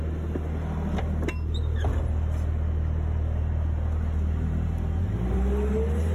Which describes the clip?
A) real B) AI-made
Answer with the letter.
A